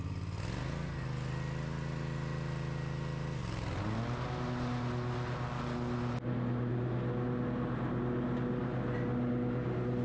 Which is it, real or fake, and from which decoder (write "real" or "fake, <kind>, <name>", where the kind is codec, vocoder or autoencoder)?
real